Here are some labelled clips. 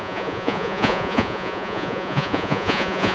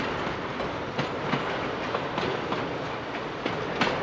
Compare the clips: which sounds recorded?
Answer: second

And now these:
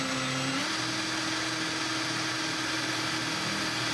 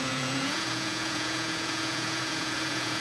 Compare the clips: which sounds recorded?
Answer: first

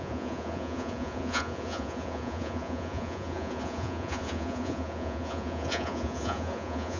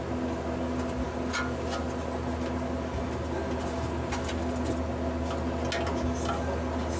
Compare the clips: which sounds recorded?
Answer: second